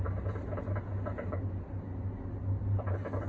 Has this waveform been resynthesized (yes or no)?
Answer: no